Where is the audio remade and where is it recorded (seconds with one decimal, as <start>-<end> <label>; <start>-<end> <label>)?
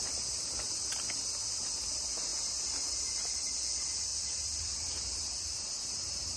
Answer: 0.0-2.3 recorded; 2.3-3.0 remade; 3.0-4.1 recorded; 4.1-5.0 remade; 5.0-6.4 recorded